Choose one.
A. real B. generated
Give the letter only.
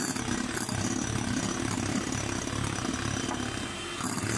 A